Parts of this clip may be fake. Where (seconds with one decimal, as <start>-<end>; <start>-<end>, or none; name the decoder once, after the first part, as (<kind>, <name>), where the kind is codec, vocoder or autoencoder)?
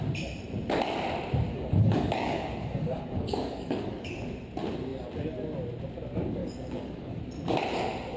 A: 1.5-4.1 (codec, DAC); 6.4-7.2